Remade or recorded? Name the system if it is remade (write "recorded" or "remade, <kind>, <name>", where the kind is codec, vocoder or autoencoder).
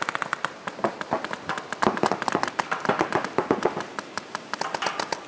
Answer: recorded